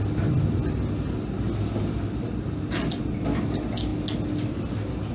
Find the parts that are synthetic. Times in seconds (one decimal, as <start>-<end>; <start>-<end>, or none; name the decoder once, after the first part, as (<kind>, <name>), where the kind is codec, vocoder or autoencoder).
none